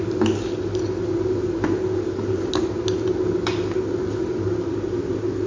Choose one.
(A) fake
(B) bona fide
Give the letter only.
B